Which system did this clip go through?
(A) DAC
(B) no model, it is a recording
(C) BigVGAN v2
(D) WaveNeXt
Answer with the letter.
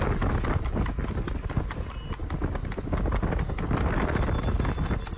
B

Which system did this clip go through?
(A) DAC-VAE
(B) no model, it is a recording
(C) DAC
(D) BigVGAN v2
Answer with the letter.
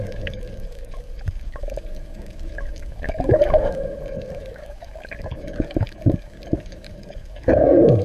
C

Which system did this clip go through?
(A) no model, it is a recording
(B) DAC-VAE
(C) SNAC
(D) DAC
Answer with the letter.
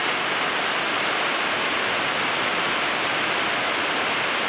A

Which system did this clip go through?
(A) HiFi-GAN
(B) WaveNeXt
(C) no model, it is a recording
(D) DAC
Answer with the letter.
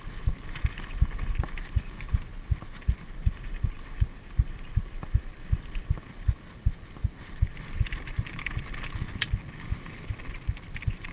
C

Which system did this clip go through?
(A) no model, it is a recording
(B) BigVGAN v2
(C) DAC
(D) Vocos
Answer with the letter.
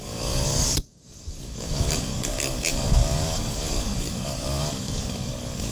C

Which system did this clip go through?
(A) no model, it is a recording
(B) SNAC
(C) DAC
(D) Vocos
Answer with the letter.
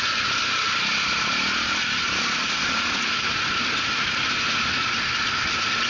A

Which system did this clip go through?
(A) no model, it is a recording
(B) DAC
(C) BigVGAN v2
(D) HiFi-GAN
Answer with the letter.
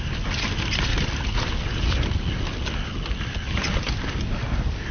A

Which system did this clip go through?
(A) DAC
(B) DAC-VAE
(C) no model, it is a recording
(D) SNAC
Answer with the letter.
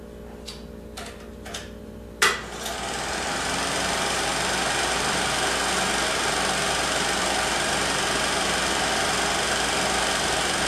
C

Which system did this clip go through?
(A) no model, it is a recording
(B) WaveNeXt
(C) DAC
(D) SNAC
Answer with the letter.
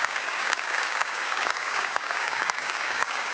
C